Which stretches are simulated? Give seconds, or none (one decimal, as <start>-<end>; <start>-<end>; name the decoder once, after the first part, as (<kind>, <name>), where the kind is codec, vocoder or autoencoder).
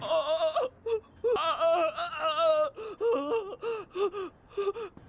none